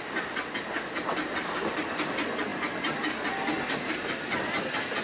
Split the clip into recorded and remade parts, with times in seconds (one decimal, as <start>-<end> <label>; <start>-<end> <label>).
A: 0.0-5.0 recorded